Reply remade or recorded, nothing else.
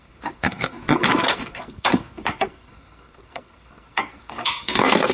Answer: remade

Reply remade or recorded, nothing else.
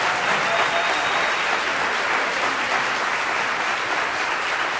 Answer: recorded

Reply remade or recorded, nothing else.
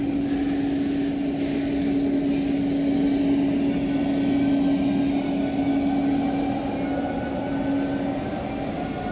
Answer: recorded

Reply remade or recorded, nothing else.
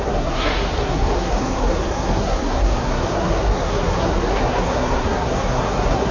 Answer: remade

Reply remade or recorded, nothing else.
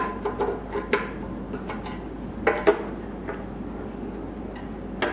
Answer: recorded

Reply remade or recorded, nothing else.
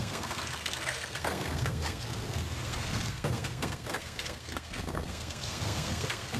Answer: remade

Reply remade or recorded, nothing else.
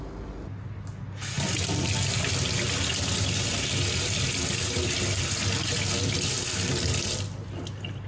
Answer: recorded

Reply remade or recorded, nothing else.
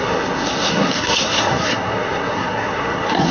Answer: remade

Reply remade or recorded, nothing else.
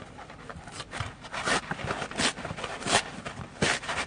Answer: recorded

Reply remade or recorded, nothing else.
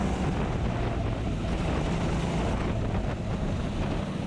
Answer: recorded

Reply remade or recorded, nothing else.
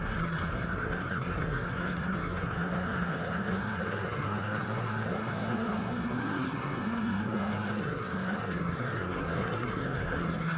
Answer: remade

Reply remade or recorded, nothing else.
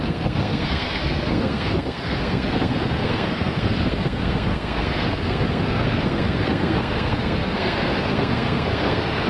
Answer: remade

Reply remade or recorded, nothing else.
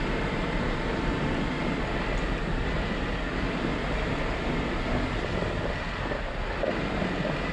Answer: recorded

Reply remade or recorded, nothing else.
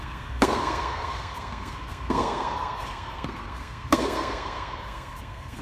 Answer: remade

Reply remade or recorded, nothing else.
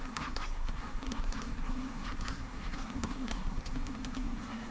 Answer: remade